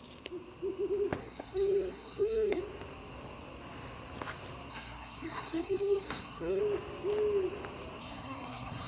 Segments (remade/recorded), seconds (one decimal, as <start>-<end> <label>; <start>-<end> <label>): 0.0-1.2 recorded; 1.2-2.6 remade; 2.6-4.7 recorded; 4.7-6.6 remade; 6.6-8.0 recorded; 8.0-8.9 remade